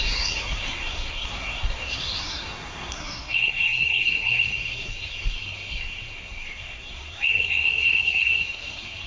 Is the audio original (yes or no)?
no